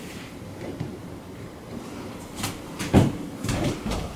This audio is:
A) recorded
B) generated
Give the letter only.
B